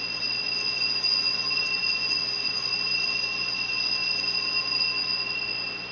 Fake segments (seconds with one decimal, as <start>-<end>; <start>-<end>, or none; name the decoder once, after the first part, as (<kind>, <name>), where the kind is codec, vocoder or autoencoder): none